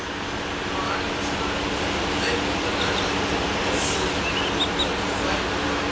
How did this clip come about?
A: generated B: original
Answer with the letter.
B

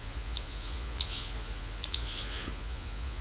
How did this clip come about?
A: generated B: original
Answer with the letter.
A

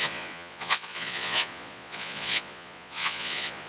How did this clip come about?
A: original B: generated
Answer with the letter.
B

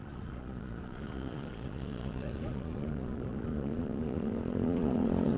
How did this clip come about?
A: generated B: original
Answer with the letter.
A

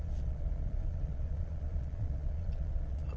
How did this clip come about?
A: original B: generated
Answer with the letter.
B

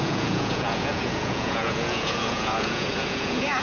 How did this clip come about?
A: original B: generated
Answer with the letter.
B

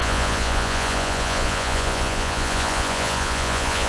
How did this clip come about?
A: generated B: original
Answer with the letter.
A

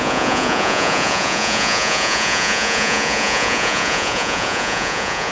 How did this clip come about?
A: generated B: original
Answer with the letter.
A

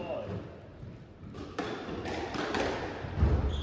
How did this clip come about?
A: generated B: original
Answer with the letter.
B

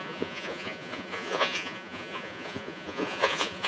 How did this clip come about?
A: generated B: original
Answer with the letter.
A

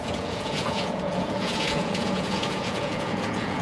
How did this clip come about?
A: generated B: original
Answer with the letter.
A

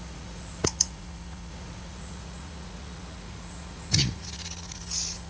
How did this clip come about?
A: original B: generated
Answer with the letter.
B